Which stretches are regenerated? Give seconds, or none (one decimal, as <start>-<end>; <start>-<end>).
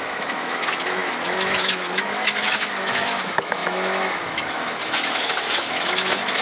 0.0-6.4